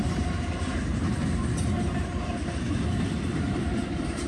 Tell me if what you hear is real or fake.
fake